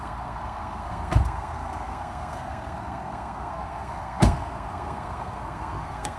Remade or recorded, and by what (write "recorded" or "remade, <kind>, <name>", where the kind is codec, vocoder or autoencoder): remade, codec, SNAC